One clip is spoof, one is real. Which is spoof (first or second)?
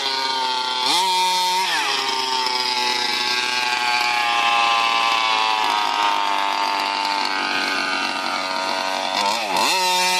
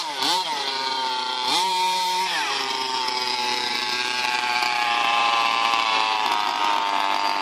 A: second